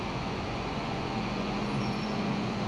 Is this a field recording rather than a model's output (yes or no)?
no